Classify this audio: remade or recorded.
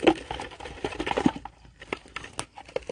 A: recorded